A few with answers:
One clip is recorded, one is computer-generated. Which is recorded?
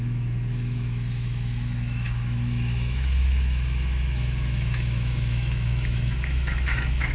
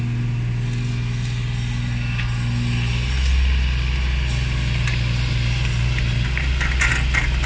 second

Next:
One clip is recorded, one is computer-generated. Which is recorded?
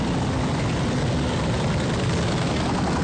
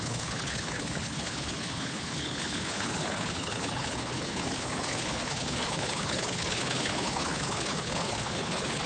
first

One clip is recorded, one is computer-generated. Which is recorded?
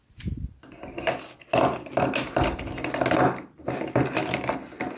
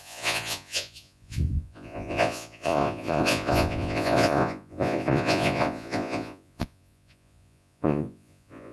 first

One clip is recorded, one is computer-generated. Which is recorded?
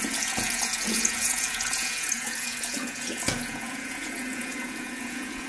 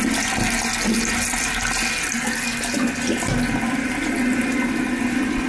second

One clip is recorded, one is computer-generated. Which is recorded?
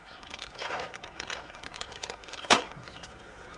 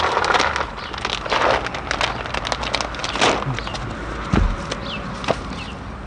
second